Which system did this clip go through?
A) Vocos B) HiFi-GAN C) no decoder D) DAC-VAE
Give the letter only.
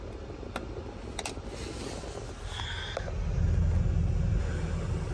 C